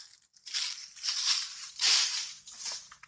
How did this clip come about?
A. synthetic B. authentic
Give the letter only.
A